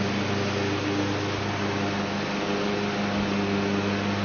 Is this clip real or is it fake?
real